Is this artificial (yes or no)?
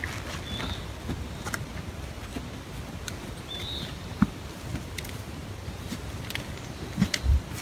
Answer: no